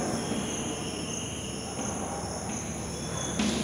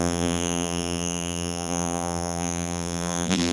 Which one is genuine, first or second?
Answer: first